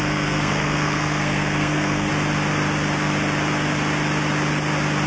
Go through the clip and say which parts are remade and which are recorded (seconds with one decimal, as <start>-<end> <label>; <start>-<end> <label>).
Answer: 0.0-2.1 remade; 2.1-5.1 recorded